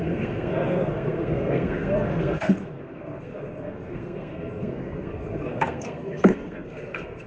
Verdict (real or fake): fake